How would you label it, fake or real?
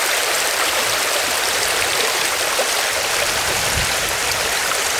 fake